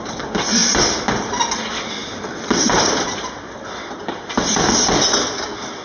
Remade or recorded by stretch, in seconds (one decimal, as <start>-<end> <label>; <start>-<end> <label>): 0.0-5.8 recorded

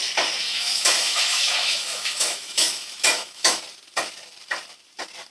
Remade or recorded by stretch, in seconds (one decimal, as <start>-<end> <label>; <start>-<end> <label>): 0.0-0.4 recorded; 0.4-3.6 remade; 3.6-5.3 recorded

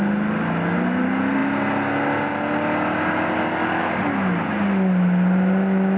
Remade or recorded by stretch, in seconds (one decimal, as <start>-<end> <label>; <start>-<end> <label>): 0.0-6.0 recorded